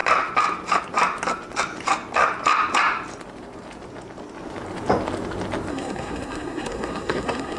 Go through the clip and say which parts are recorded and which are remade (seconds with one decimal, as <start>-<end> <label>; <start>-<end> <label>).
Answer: 0.0-5.7 recorded; 5.7-7.6 remade